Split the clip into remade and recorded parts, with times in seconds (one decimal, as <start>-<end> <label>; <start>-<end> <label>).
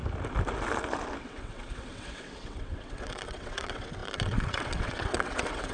0.0-1.2 recorded; 1.2-5.7 remade